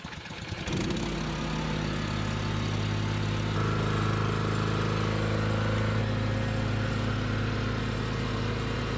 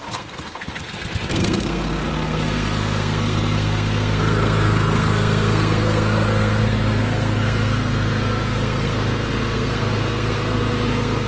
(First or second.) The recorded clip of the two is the first